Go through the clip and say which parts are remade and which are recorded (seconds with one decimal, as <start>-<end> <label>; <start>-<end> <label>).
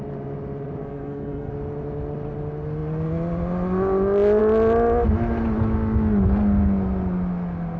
0.0-0.8 recorded; 0.8-1.5 remade; 1.5-7.8 recorded